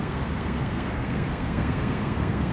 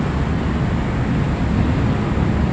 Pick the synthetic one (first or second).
first